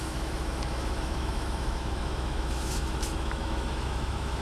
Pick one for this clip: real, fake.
fake